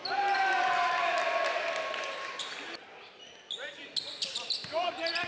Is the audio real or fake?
real